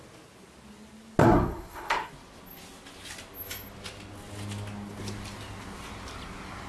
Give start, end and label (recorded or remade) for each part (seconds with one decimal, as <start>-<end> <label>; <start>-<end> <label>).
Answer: 0.0-1.2 recorded; 1.2-2.1 remade; 2.1-6.7 recorded